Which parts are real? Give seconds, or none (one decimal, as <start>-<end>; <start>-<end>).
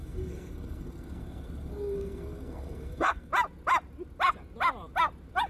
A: 3.3-5.5